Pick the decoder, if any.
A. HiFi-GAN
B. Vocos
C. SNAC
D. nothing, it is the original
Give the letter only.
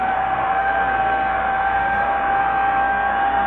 C